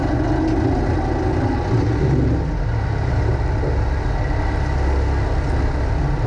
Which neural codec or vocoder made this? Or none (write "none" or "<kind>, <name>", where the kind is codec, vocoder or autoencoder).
none